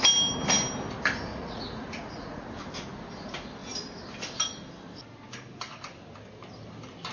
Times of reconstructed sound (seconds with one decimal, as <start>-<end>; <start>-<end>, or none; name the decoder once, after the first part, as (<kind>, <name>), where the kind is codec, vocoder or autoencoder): 1.3-2.5 (vocoder, Vocos)

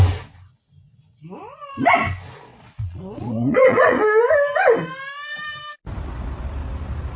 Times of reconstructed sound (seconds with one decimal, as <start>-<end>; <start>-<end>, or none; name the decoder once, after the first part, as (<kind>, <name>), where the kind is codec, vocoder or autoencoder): 2.5-4.2 (vocoder, Vocos)